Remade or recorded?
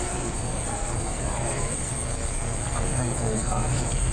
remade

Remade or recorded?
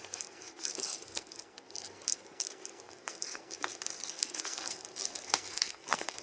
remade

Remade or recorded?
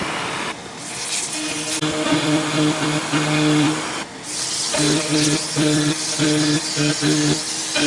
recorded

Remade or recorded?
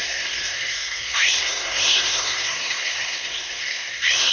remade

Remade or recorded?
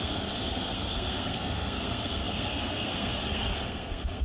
remade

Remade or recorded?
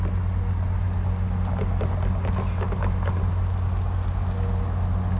recorded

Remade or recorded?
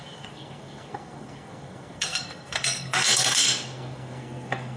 remade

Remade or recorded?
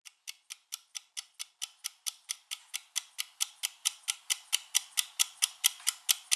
recorded